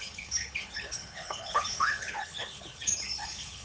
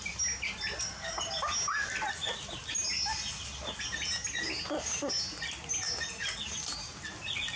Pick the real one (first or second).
second